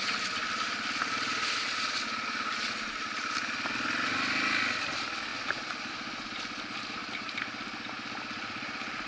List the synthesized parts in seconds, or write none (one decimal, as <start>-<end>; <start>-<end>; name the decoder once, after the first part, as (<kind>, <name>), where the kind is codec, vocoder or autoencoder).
none